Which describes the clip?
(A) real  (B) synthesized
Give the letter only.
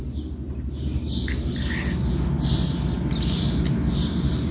A